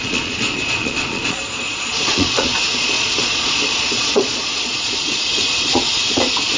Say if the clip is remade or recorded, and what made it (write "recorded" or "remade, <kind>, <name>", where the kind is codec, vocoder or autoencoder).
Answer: remade, vocoder, Vocos